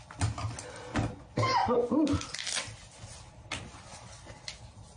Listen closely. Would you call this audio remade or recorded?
recorded